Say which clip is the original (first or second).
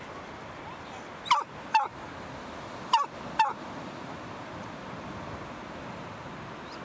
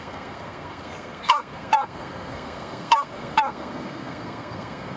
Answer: first